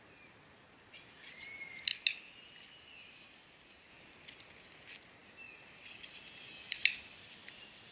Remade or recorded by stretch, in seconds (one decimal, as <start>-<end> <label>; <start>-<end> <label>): 0.0-7.9 recorded